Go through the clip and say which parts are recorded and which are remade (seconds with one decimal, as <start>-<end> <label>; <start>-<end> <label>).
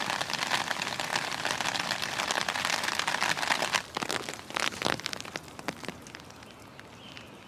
0.0-7.5 recorded